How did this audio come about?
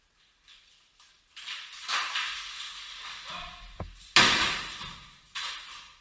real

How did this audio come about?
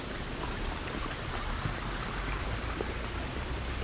real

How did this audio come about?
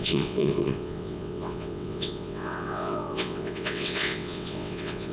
fake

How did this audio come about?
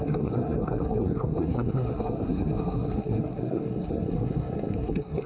fake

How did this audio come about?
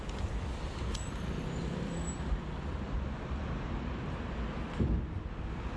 real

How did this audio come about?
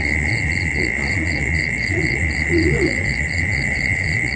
fake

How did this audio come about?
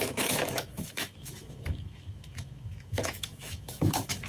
fake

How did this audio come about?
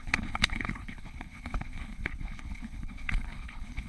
fake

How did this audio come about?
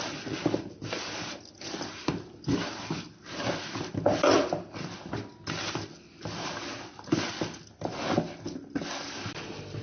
real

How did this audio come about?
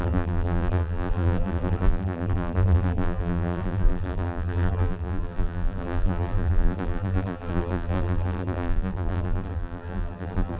fake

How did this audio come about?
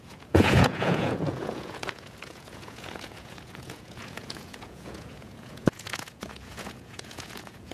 fake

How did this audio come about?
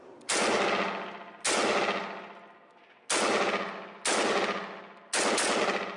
real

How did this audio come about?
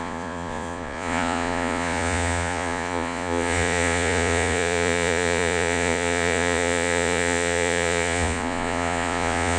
fake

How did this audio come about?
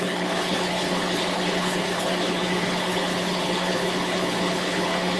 fake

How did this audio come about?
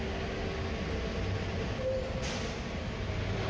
real